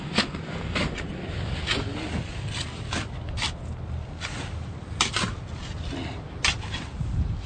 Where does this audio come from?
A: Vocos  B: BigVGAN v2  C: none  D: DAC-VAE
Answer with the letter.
C